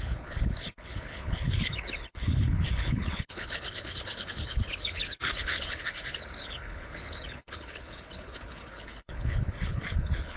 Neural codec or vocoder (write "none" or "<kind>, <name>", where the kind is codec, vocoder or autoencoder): codec, HILCodec